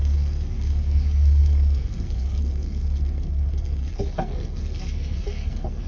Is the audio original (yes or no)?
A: no